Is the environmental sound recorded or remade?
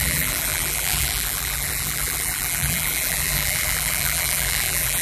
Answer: remade